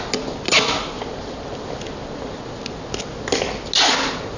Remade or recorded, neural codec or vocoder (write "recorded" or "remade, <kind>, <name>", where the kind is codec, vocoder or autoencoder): recorded